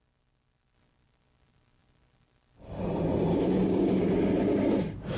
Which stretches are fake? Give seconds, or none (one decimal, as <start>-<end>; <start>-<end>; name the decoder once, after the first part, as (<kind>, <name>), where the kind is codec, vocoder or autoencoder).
none